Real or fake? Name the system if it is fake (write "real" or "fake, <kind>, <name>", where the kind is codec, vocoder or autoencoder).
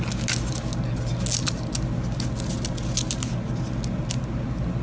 real